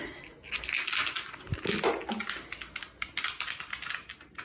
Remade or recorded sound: recorded